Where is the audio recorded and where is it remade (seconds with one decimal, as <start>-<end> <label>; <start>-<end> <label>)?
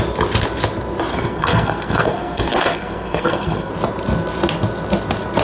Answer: 0.0-1.1 recorded; 1.1-3.7 remade; 3.7-5.4 recorded